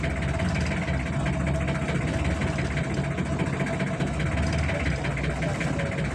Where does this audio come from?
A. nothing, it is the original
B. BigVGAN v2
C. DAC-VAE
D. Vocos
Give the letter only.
A